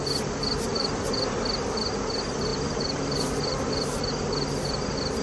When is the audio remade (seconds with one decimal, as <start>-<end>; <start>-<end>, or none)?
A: 0.7-1.3; 2.5-4.1